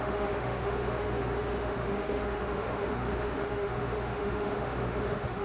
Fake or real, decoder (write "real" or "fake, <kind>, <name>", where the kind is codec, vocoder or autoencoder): fake, autoencoder, DAC-VAE